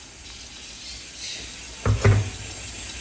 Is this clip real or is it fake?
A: real